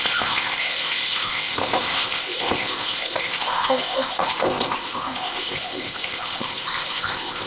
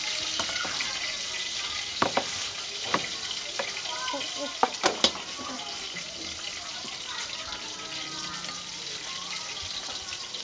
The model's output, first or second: first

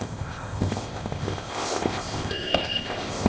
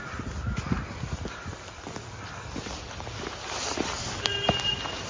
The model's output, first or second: first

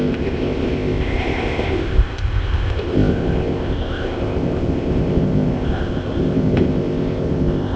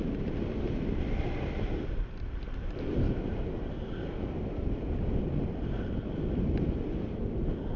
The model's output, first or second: first